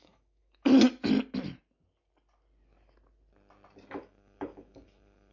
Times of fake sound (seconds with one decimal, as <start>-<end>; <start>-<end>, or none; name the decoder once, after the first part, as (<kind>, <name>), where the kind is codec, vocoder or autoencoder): 0.0-0.7 (autoencoder, DAC-VAE); 3.9-5.3